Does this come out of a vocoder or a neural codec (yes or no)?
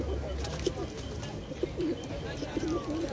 no